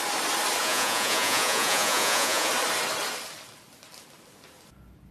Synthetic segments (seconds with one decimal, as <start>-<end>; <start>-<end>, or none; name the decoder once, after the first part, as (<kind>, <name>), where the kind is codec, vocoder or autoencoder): 0.6-2.5 (vocoder, Vocos)